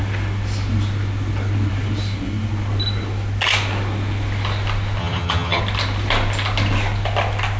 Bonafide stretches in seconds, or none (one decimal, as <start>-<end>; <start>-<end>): 0.0-5.0; 5.6-7.6